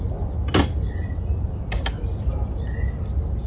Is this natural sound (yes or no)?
yes